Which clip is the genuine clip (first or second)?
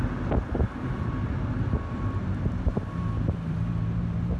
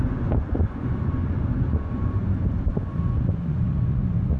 first